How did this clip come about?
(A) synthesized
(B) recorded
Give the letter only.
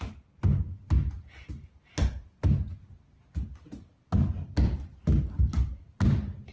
B